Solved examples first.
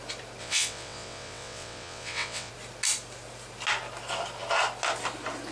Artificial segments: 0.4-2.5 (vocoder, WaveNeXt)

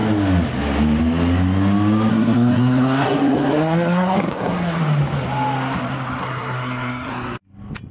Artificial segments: 2.1-4.8 (codec, SNAC); 6.2-7.1

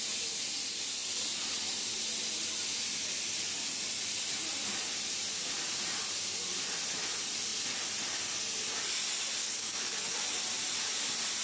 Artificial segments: 9.4-10.1 (codec, DAC)

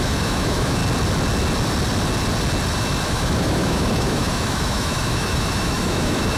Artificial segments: 0.0-0.8 (autoencoder, DAC-VAE); 3.1-6.4

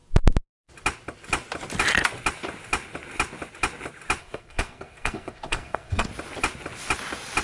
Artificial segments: 4.2-6.1 (codec, SNAC)

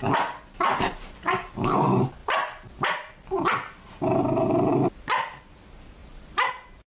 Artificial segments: 6.0-6.5 (vocoder, BigVGAN v2)

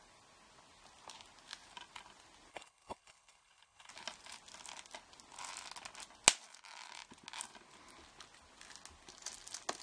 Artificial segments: 2.5-3.9 (codec, HILCodec)

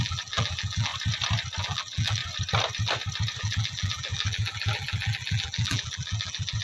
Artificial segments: 0.0-0.9 (vocoder, BigVGAN v2); 1.6-2.2; 3.4-6.6